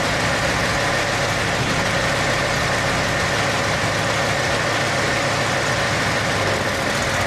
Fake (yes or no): no